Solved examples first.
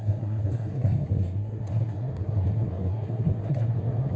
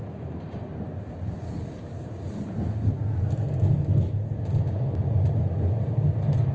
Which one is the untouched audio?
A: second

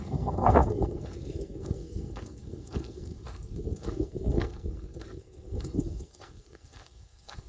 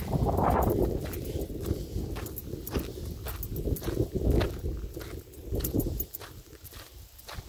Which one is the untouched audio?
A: second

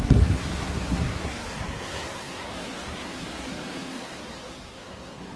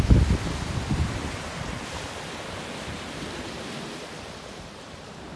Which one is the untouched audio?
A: second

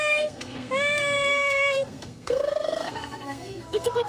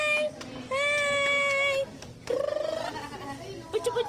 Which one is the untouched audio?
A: second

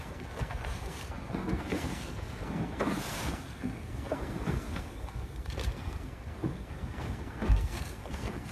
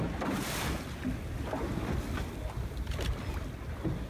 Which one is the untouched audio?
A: second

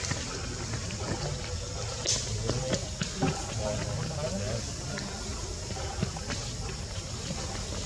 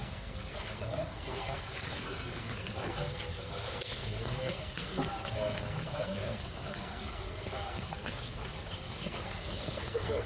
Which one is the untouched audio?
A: first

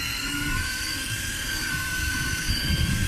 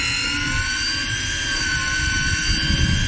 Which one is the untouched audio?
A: second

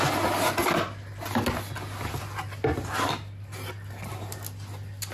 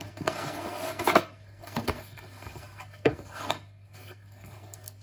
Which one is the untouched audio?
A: first